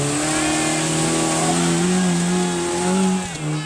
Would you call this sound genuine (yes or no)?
yes